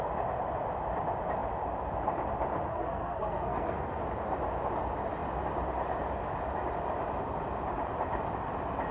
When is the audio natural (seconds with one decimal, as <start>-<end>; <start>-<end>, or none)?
0.0-2.7; 4.0-8.9